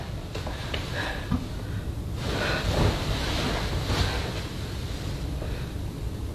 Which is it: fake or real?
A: fake